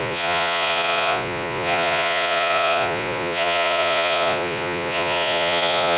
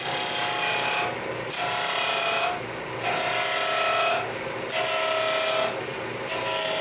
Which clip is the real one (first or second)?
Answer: second